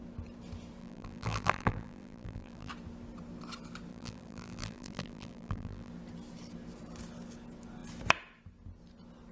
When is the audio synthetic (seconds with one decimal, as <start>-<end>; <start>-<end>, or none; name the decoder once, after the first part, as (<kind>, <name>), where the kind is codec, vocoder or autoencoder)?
0.8-2.7 (vocoder, BigVGAN v2); 3.9-5.9